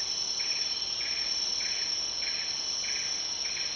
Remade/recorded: recorded